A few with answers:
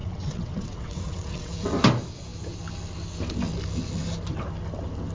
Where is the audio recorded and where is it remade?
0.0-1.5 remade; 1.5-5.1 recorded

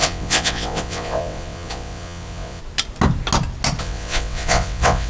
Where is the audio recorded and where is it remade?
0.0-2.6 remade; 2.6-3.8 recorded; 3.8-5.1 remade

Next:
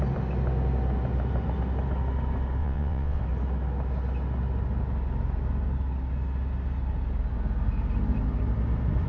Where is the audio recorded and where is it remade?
0.0-2.6 recorded; 2.6-3.2 remade; 3.2-9.1 recorded